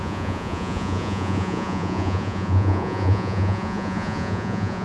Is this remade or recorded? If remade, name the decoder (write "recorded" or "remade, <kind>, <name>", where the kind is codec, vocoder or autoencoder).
remade, vocoder, Vocos